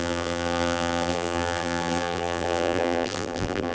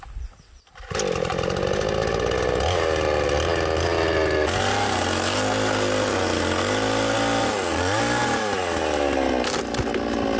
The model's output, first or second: first